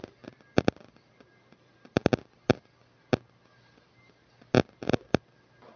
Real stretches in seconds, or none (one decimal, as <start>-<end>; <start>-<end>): 0.0-5.8